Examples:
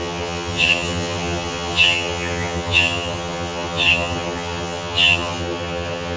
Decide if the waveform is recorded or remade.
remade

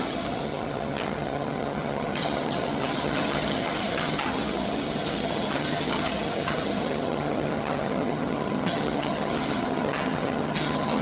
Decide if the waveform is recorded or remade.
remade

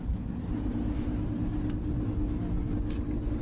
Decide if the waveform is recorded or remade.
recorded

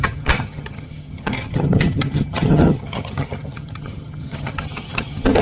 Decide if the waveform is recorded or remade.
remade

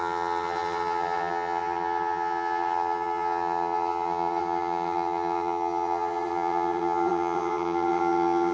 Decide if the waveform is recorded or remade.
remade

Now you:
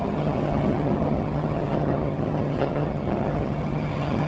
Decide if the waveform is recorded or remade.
remade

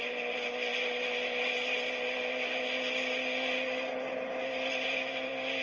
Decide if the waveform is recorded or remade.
recorded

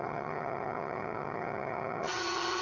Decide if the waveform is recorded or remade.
remade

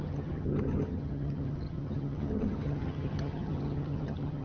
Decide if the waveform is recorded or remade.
remade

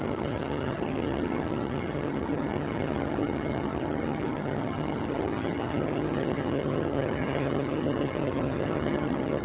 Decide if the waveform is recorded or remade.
remade